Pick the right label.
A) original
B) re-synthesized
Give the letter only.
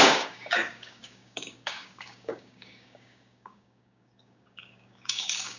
B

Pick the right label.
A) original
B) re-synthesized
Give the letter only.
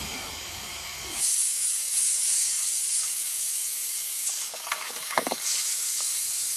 B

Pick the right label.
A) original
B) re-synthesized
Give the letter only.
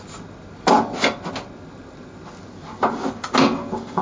A